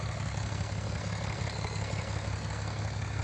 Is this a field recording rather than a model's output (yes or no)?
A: no